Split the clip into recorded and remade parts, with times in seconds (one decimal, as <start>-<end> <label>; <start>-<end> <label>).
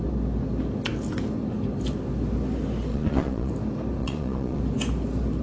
0.0-2.9 recorded; 2.9-3.5 remade; 3.5-4.0 recorded; 4.0-4.6 remade; 4.6-5.4 recorded